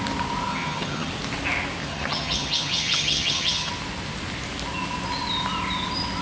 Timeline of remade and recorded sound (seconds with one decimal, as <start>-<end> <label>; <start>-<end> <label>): 0.0-0.5 recorded; 0.5-1.1 remade; 1.1-1.8 recorded; 1.8-3.7 remade; 3.7-6.2 recorded